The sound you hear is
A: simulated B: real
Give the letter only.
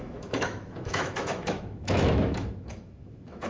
A